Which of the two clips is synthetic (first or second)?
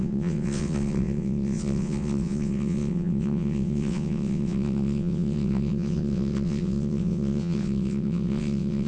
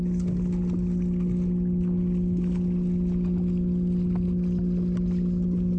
first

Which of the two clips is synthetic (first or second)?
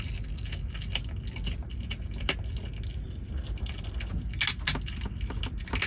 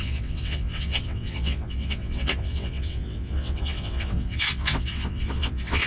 second